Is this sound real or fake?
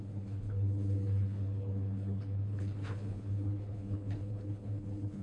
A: fake